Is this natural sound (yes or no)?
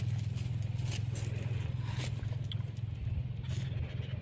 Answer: yes